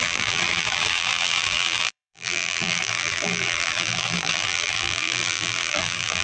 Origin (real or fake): fake